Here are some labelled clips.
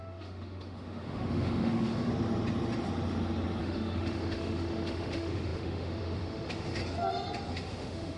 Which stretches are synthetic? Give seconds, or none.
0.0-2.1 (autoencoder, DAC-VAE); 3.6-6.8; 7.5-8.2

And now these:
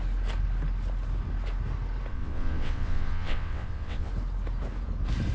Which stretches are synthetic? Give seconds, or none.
2.1-4.1 (vocoder, WaveNeXt)

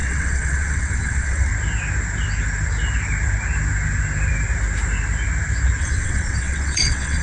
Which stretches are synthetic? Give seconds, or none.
0.0-1.5 (vocoder, WaveNeXt); 5.8-7.2

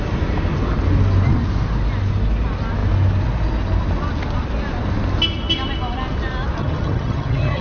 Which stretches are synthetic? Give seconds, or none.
6.6-7.6 (vocoder, HiFi-GAN)

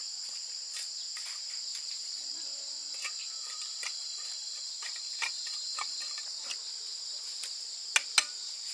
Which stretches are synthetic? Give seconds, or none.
1.7-2.3 (vocoder, BigVGAN v2); 3.2-6.2

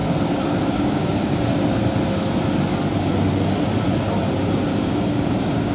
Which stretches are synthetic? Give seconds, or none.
0.7-1.5 (codec, DAC); 4.9-5.7